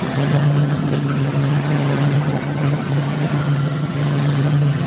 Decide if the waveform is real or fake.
fake